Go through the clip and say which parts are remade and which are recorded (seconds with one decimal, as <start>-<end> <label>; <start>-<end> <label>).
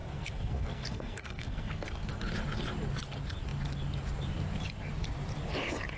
0.0-2.3 remade; 2.3-6.0 recorded